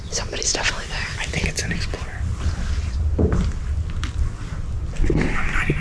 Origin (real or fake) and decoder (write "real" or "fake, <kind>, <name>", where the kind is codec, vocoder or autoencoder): real